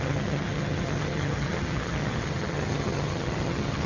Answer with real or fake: fake